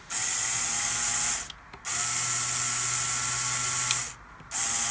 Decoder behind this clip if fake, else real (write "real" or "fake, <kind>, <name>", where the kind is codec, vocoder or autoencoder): real